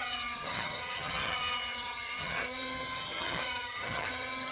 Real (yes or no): no